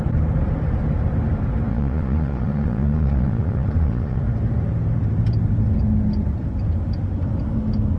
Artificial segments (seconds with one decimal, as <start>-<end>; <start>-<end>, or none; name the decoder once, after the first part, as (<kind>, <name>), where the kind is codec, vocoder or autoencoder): 1.7-4.2 (vocoder, Vocos)